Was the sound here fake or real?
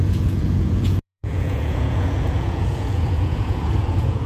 fake